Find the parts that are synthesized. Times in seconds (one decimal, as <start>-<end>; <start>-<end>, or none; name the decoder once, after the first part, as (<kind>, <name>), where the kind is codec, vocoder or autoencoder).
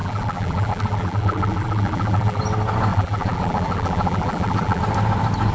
0.0-2.4 (vocoder, BigVGAN v2); 2.9-4.8